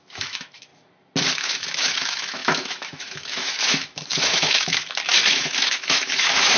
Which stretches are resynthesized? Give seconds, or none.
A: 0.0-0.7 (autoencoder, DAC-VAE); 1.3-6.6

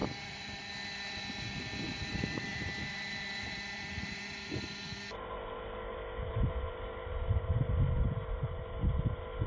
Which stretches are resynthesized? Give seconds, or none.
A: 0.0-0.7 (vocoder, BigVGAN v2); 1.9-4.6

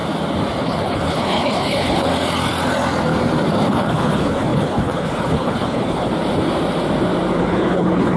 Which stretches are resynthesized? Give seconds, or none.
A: 0.6-2.1 (codec, HILCodec); 3.5-6.1; 7.4-8.2

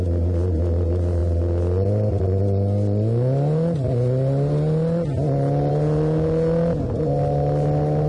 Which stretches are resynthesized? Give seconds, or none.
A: none

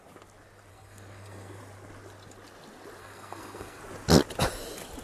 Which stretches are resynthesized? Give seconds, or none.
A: 0.7-1.6 (codec, SNAC); 3.0-3.8

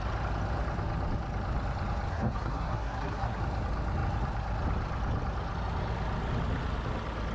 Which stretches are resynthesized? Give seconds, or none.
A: 2.1-3.4 (codec, SNAC)

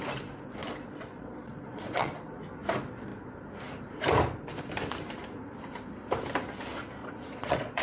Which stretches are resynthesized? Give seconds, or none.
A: 0.6-2.4 (vocoder, Vocos); 7.0-7.8